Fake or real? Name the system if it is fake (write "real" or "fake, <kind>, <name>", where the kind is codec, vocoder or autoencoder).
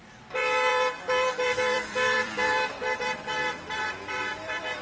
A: fake, vocoder, BigVGAN v2